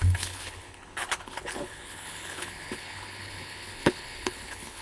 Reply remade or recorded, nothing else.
remade